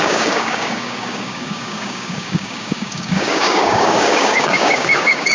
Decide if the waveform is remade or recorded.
remade